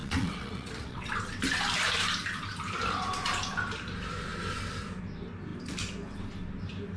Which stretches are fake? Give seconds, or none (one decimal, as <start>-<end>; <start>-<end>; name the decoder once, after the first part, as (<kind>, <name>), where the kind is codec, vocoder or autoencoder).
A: 0.0-1.1 (vocoder, WaveNeXt)